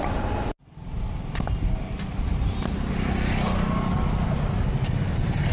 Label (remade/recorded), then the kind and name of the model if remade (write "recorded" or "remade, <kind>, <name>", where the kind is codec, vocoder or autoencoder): recorded